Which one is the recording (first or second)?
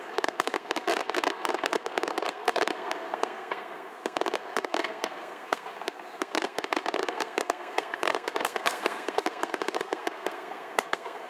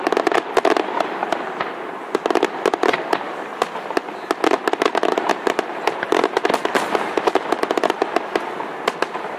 second